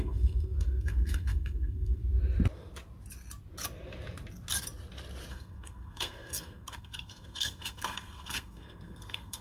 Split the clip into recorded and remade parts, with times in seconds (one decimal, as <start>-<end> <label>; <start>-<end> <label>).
0.0-2.0 remade; 2.0-5.3 recorded; 5.3-9.4 remade